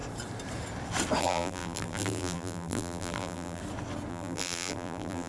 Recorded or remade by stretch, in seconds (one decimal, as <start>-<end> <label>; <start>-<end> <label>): 0.0-1.2 recorded; 1.2-3.6 remade; 3.6-4.1 recorded; 4.1-5.3 remade